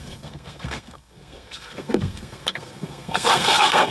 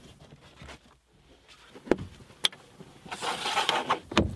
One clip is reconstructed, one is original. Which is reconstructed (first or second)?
first